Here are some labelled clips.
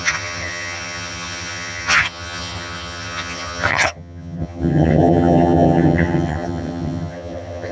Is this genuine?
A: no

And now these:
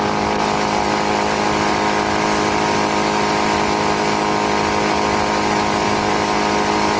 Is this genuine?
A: yes